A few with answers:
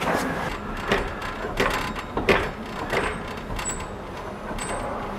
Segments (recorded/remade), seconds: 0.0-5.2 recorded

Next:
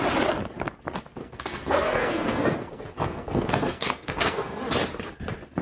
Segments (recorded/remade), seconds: 0.0-1.2 recorded; 1.2-4.6 remade; 4.6-5.6 recorded

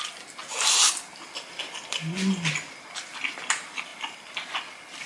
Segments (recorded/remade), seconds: 0.0-5.1 recorded

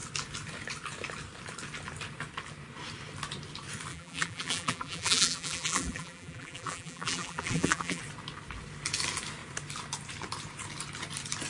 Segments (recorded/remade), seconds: 0.0-3.9 recorded; 3.9-8.0 remade; 8.0-11.5 recorded

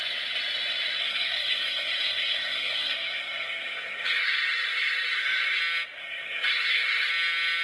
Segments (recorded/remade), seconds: 0.0-1.0 recorded; 1.0-5.6 remade; 5.6-6.0 recorded; 6.0-7.1 remade; 7.1-7.6 recorded

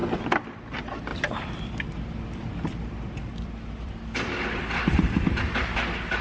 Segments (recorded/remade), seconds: 0.0-1.1 recorded; 1.1-4.8 remade; 4.8-6.2 recorded

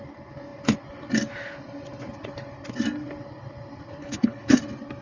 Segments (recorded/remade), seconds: 0.0-4.0 recorded; 4.0-4.6 remade; 4.6-5.0 recorded

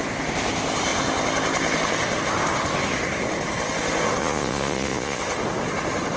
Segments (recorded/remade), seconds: 0.0-4.2 recorded; 4.2-5.2 remade; 5.2-6.2 recorded